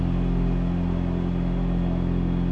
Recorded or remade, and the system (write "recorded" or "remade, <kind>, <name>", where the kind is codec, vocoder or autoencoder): recorded